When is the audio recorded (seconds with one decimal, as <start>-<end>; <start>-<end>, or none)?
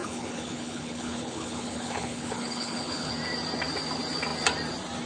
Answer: 3.1-5.1